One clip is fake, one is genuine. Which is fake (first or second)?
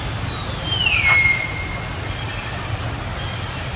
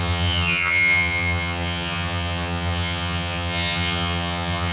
second